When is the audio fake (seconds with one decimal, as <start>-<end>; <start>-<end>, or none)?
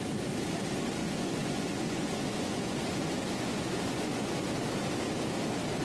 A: 1.0-4.5